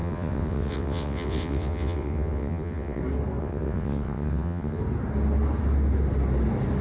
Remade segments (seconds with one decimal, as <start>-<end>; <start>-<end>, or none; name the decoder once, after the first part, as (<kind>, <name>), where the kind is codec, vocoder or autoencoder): 0.0-3.0 (vocoder, WaveNeXt); 3.4-4.8

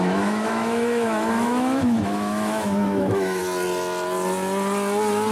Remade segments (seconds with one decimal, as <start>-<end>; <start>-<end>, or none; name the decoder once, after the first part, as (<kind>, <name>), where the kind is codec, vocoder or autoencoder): 0.0-3.4 (autoencoder, DAC-VAE)

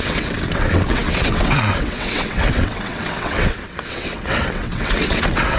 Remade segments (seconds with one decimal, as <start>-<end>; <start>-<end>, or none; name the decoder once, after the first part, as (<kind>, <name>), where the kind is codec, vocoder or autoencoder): 0.0-5.6 (vocoder, WaveNeXt)

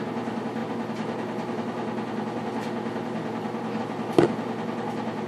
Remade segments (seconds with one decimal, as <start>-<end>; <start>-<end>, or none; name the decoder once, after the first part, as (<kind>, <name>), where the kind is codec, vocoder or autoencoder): none

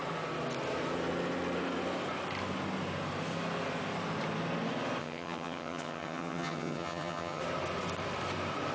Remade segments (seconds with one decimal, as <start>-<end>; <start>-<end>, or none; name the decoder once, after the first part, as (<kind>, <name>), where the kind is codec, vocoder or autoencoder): 5.0-7.4 (vocoder, HiFi-GAN)

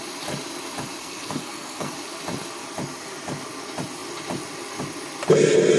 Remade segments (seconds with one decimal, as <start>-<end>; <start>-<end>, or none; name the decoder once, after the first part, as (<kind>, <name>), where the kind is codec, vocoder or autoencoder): 1.0-1.9 (codec, SNAC)